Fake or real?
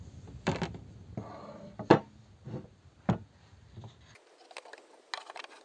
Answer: real